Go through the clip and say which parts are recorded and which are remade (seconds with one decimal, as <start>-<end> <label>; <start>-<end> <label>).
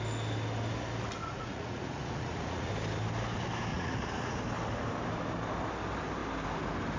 0.0-1.2 recorded; 1.2-2.7 remade; 2.7-3.7 recorded; 3.7-4.4 remade; 4.4-7.0 recorded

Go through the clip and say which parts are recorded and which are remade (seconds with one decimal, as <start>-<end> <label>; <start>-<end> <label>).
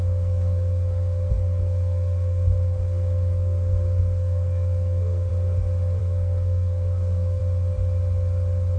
0.0-5.3 remade; 5.3-6.0 recorded; 6.0-7.4 remade; 7.4-8.8 recorded